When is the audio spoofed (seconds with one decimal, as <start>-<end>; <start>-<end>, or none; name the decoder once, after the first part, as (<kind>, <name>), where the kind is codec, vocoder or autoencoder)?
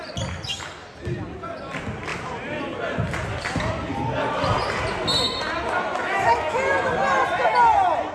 6.0-6.6 (autoencoder, DAC-VAE)